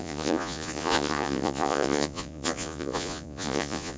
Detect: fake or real fake